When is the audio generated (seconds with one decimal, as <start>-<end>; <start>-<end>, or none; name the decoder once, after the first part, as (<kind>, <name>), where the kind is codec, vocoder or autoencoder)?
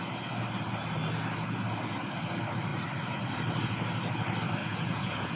4.6-5.4 (vocoder, Vocos)